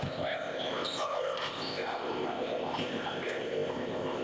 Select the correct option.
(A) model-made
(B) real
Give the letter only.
A